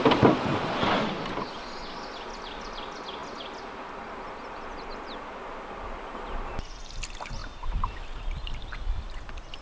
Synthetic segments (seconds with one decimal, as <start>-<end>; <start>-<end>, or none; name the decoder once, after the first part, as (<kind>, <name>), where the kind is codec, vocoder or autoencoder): none